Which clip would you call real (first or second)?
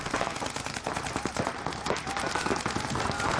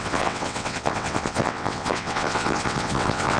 first